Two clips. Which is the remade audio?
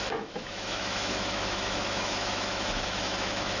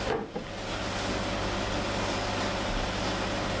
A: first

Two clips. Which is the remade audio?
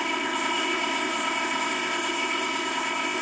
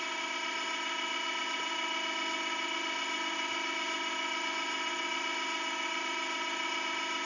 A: first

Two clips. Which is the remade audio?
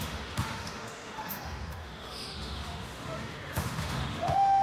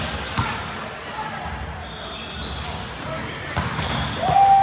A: first